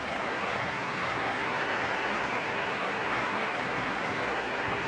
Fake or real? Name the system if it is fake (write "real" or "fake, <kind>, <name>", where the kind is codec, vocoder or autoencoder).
fake, codec, SNAC